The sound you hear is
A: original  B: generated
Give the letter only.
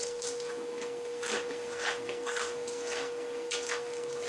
B